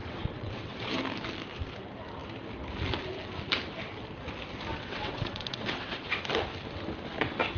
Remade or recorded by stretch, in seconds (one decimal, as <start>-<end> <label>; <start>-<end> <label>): 0.0-0.9 remade; 0.9-4.7 recorded; 4.7-6.2 remade; 6.2-7.6 recorded